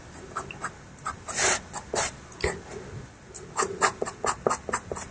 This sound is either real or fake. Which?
real